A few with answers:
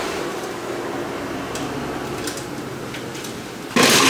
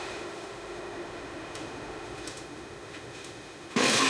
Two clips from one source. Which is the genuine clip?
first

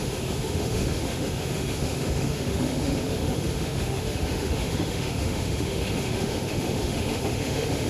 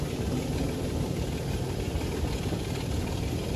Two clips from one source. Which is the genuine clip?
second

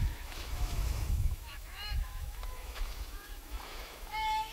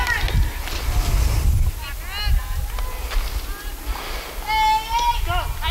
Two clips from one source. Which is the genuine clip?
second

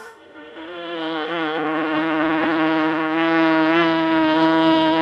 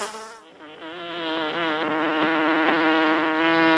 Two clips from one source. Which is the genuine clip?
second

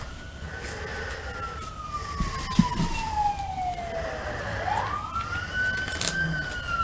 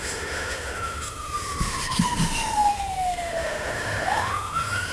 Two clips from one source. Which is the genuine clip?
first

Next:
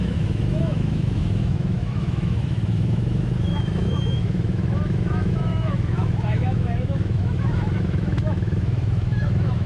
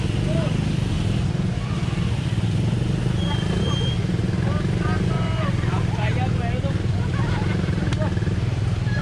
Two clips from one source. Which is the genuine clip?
second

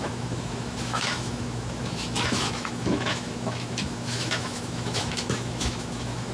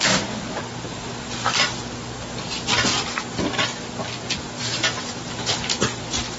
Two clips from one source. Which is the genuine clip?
second